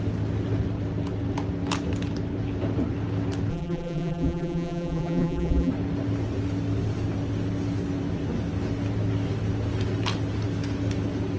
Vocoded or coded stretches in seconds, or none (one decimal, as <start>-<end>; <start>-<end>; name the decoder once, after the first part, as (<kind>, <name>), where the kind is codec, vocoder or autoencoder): 3.5-5.7 (vocoder, BigVGAN v2)